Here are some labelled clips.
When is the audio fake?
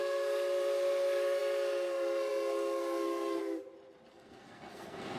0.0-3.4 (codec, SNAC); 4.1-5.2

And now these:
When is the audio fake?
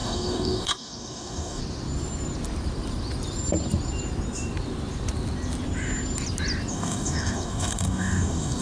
0.0-1.6 (codec, DAC); 6.7-8.6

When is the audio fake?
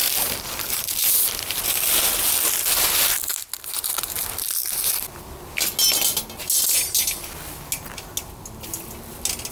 0.0-1.6 (vocoder, BigVGAN v2)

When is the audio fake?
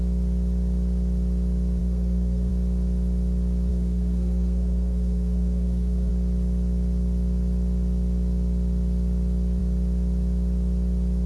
1.8-2.5 (codec, SNAC); 3.7-6.1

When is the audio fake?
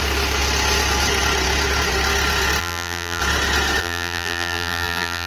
2.6-3.2 (vocoder, BigVGAN v2); 3.8-5.3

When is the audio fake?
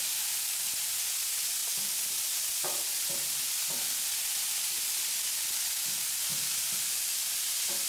6.3-7.9 (vocoder, BigVGAN v2)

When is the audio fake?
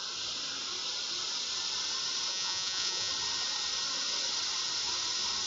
2.3-3.1 (vocoder, Vocos)